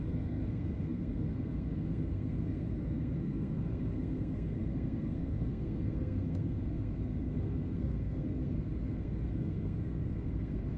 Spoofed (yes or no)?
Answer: yes